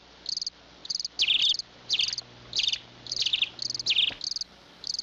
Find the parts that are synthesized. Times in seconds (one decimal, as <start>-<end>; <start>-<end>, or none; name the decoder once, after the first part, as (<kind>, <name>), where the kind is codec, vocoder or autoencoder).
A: 0.8-3.5 (vocoder, BigVGAN v2)